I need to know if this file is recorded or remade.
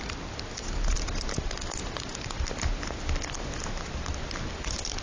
recorded